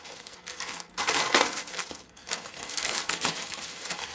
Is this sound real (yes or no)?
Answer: no